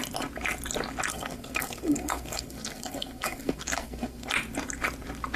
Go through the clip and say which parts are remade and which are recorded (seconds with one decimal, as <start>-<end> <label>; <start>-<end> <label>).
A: 0.0-1.1 recorded; 1.1-4.3 remade; 4.3-5.4 recorded